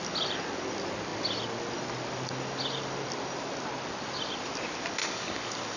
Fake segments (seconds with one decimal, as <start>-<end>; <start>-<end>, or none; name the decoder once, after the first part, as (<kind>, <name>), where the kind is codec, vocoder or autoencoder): 5.0-5.8 (codec, DAC)

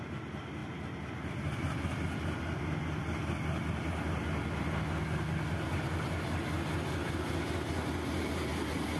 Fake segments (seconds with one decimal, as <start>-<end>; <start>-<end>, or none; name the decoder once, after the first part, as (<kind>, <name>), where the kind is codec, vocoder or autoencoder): none